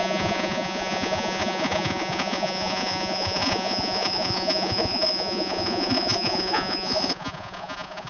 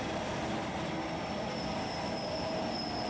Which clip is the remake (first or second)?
first